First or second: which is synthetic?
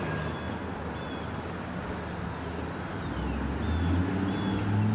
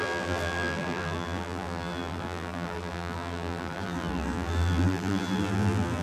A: second